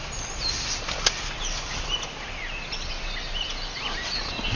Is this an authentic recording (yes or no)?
yes